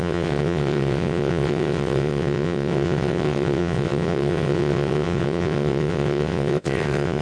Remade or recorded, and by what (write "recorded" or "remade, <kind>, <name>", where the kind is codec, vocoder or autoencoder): remade, vocoder, WaveNeXt